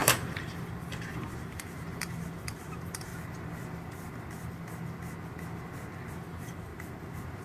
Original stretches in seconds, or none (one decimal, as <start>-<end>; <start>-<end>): 3.1-6.1; 6.7-7.4